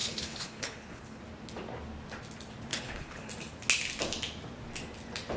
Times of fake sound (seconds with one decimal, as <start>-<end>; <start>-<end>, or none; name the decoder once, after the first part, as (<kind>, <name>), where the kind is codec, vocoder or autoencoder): 0.0-1.2 (codec, HILCodec); 2.7-3.3